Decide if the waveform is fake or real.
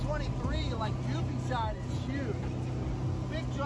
real